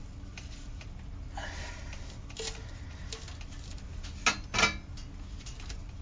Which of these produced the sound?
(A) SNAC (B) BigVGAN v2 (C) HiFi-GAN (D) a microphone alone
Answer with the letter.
D